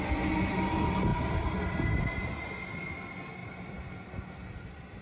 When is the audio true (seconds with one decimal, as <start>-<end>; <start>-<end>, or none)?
0.0-5.0